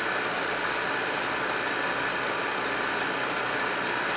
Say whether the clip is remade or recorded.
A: recorded